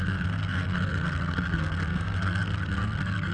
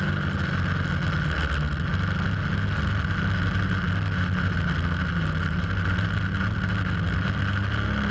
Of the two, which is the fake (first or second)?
first